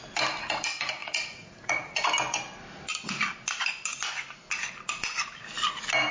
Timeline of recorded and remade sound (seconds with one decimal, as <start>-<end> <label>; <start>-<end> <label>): 0.0-1.0 recorded; 1.0-2.0 remade; 2.0-6.1 recorded